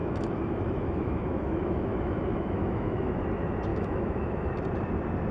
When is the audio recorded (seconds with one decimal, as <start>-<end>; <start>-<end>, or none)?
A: 3.2-3.7; 4.5-5.3

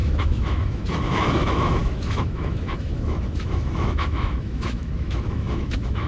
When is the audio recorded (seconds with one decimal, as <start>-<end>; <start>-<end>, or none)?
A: none